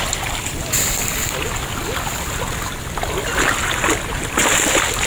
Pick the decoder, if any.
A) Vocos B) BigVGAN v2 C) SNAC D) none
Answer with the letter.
D